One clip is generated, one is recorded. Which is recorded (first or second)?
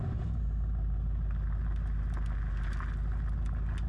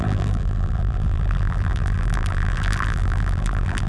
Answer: first